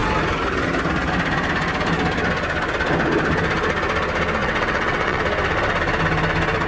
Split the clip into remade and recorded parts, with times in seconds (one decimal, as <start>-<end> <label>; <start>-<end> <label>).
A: 0.0-4.4 recorded; 4.4-5.2 remade; 5.2-6.7 recorded